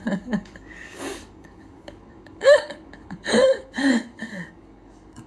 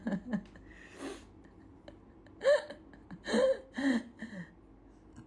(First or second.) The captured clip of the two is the second